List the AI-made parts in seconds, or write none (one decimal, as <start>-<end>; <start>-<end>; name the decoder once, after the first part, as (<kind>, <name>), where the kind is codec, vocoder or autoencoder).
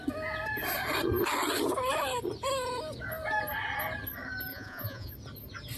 4.5-5.1 (vocoder, Vocos)